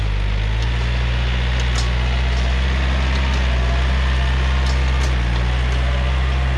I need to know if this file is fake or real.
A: real